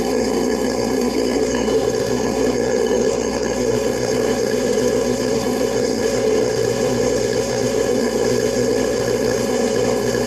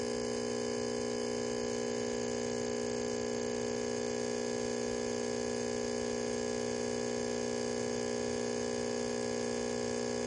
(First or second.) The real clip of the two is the second